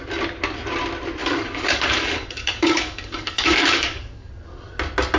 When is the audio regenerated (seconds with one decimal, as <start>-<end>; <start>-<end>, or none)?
1.2-4.3

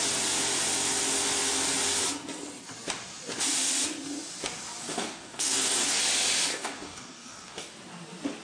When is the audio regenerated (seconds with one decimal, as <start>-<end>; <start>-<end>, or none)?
4.8-6.0; 6.5-7.7

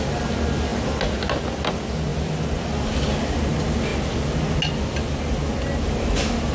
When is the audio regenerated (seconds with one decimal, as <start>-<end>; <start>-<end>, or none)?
none

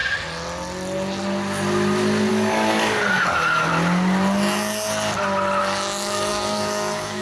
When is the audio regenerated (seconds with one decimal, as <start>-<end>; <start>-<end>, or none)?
2.3-3.7; 5.6-7.2